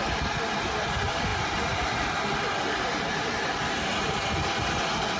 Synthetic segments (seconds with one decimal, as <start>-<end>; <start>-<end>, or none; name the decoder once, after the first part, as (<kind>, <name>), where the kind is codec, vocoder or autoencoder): none